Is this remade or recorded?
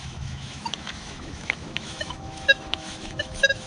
remade